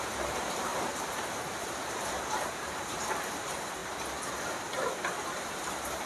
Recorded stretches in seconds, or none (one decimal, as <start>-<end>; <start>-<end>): 3.8-5.3